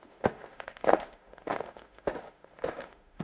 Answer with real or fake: fake